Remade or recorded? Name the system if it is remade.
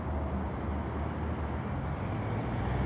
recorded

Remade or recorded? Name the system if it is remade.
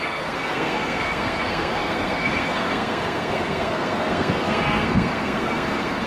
remade, codec, SNAC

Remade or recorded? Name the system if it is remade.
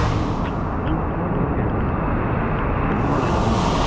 recorded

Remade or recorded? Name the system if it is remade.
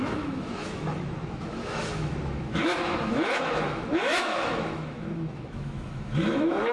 remade, autoencoder, DAC-VAE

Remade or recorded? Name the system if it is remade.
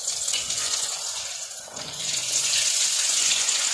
remade, vocoder, Vocos